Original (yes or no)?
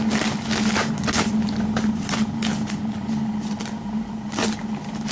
yes